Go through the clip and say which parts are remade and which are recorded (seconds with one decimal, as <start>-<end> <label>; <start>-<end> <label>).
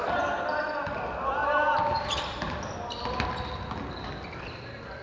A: 0.0-5.0 recorded